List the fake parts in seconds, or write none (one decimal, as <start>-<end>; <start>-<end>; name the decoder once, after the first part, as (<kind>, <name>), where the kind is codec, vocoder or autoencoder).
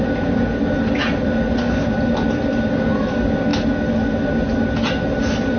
none